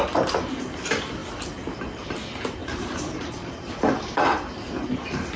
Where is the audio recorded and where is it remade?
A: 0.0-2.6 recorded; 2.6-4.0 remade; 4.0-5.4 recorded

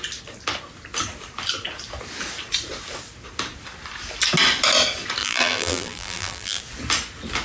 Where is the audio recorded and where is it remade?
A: 0.0-5.2 recorded; 5.2-6.6 remade; 6.6-7.4 recorded

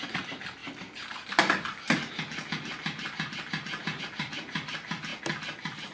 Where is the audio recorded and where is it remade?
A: 0.0-0.6 remade; 0.6-4.0 recorded; 4.0-5.1 remade; 5.1-5.9 recorded

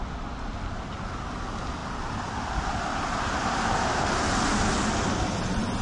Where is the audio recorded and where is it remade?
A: 0.0-1.8 recorded; 1.8-3.3 remade; 3.3-5.8 recorded

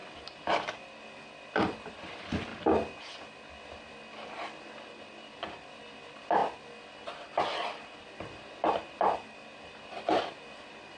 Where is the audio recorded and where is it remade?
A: 0.0-6.4 remade; 6.4-8.8 recorded; 8.8-11.0 remade

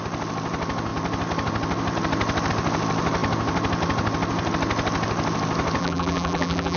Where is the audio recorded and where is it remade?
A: 0.0-5.8 recorded; 5.8-6.8 remade